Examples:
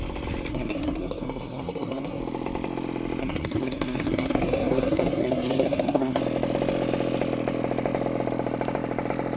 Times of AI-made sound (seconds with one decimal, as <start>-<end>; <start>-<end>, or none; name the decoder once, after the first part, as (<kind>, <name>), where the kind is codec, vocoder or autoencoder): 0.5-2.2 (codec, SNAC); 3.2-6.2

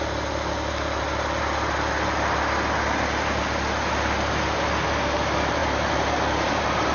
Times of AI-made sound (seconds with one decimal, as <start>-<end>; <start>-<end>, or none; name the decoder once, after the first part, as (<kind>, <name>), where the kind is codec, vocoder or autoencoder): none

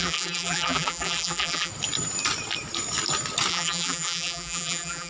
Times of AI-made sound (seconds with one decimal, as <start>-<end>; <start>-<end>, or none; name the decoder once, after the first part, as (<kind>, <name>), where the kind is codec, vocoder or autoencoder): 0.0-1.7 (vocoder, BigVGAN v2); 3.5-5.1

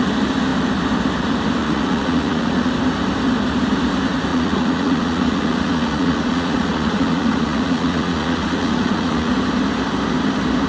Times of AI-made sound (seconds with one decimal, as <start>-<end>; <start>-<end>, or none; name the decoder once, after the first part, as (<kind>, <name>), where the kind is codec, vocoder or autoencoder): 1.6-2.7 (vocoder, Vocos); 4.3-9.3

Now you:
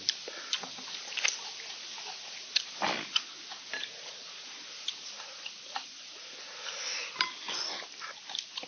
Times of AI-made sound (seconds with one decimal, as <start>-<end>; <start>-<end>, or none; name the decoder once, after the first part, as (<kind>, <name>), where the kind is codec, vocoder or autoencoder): none

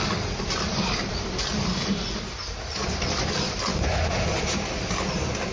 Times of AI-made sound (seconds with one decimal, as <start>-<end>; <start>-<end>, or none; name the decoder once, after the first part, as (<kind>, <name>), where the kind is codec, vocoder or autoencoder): 0.7-1.4 (vocoder, BigVGAN v2); 3.7-4.6